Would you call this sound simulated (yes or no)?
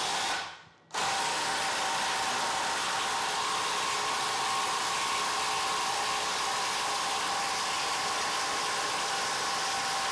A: no